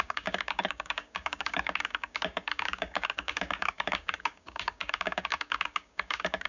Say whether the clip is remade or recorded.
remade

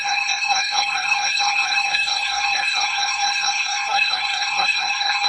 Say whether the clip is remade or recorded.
remade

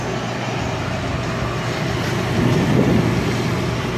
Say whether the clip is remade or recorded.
recorded